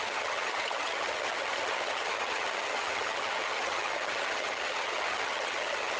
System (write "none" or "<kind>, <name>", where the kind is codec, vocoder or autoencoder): vocoder, HiFi-GAN